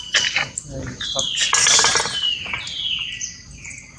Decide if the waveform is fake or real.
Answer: real